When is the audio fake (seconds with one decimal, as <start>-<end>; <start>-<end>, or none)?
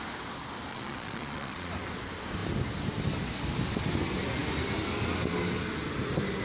0.7-1.7